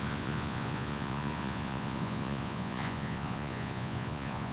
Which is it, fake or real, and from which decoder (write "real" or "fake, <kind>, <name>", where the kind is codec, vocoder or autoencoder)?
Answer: fake, vocoder, Vocos